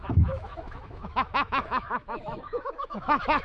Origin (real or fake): fake